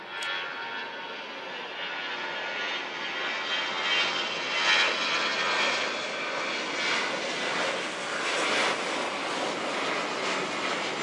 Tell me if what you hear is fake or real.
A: real